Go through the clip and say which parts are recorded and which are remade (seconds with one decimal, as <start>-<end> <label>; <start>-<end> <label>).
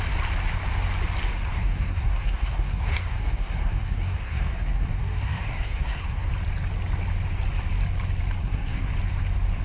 0.0-1.5 recorded; 1.5-6.3 remade; 6.3-8.4 recorded; 8.4-8.9 remade; 8.9-9.6 recorded